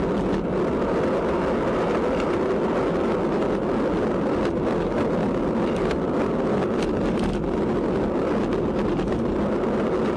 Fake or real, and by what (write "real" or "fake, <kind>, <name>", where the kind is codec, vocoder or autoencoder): real